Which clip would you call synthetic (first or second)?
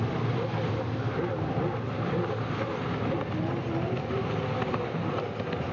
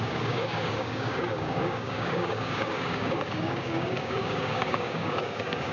second